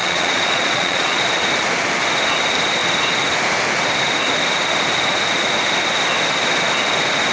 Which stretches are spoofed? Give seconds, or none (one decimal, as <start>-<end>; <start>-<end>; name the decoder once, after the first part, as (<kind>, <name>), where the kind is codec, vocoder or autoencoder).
0.0-1.2 (vocoder, Vocos)

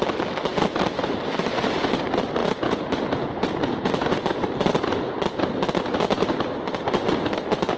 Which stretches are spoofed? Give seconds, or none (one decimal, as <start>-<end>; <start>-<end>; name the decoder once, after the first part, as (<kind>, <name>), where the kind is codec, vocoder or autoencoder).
2.4-3.9 (vocoder, Vocos)

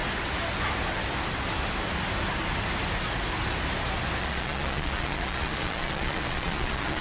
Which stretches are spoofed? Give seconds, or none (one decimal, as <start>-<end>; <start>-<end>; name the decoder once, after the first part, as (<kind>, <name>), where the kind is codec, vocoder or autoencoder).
4.2-7.0 (vocoder, Vocos)

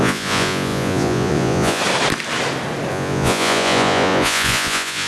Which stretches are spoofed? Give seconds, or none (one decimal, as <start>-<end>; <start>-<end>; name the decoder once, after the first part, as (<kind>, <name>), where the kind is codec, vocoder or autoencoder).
0.0-1.8 (vocoder, Vocos); 2.9-5.1

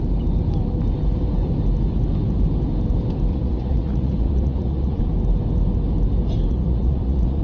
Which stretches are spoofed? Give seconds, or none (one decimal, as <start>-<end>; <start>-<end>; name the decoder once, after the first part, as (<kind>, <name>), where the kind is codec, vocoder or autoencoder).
3.3-5.0 (vocoder, Vocos); 6.5-7.4

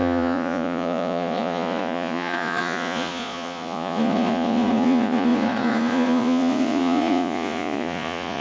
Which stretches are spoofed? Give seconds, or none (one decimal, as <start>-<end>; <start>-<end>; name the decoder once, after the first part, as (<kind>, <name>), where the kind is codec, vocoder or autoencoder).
0.0-8.4 (vocoder, Vocos)

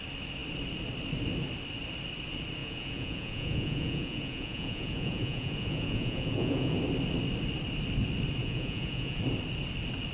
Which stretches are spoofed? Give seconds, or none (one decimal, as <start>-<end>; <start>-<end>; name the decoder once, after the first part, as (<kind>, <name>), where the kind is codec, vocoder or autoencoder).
2.6-6.8 (vocoder, Vocos); 8.4-9.2

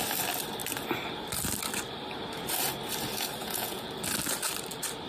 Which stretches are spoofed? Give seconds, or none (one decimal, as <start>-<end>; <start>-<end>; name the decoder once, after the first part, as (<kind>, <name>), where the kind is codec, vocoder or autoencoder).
3.4-3.9 (vocoder, Vocos)